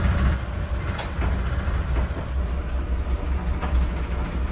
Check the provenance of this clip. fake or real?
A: real